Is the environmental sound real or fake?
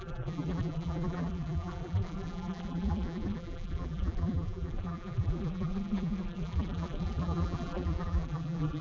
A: fake